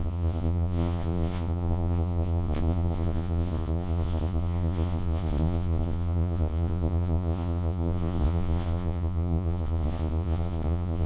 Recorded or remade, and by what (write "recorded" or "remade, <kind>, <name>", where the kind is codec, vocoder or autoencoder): remade, vocoder, Vocos